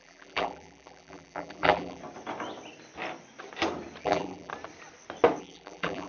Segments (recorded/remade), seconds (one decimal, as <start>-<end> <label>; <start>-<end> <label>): 0.0-2.0 remade; 2.0-4.0 recorded; 4.0-4.5 remade; 4.5-5.4 recorded; 5.4-6.1 remade